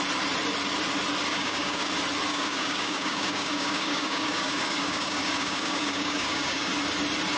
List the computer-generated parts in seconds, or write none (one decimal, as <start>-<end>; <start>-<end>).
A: 1.3-1.9; 2.3-6.7